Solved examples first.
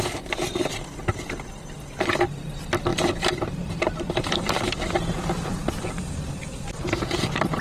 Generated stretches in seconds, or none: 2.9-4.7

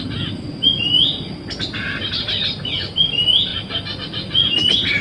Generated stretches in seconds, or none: none

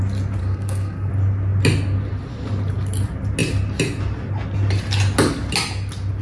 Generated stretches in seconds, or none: 0.4-1.1

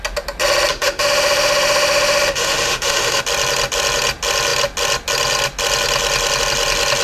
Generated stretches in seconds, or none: 0.7-3.2

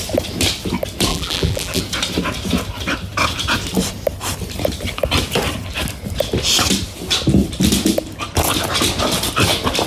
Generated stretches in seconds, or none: 1.1-1.8

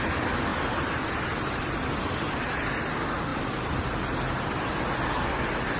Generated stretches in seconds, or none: none

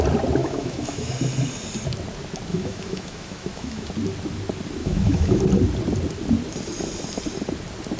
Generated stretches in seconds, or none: 0.4-1.1; 2.5-3.9; 4.8-5.4

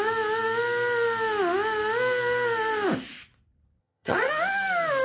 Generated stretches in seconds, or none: 3.8-4.3